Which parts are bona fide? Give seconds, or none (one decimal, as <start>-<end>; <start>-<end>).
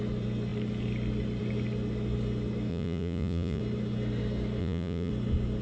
0.0-2.7; 3.6-4.6; 5.1-5.6